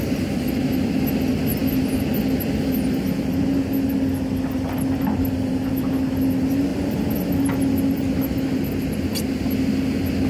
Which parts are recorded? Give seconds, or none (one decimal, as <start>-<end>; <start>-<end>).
0.0-10.3